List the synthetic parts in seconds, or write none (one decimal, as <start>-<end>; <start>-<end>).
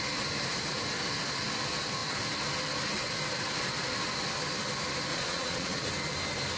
5.1-5.9